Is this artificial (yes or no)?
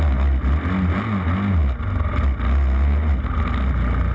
no